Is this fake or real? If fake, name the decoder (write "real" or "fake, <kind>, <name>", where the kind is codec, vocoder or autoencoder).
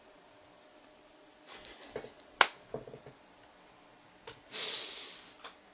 real